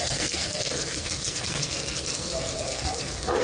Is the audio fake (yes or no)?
yes